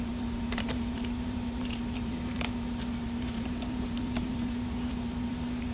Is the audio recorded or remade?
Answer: remade